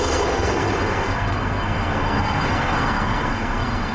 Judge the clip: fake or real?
fake